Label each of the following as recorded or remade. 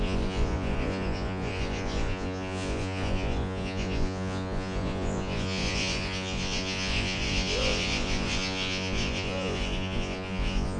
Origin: remade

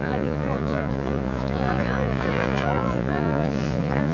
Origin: remade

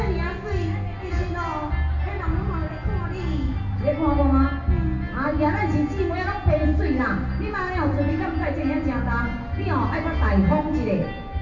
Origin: recorded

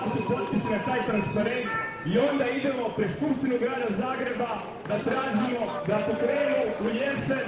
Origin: recorded